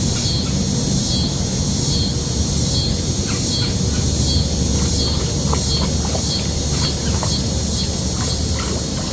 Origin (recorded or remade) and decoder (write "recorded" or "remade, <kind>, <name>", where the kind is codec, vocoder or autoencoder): recorded